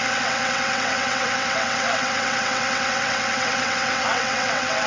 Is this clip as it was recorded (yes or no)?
no